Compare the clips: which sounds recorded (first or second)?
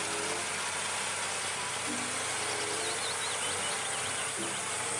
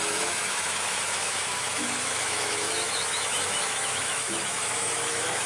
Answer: first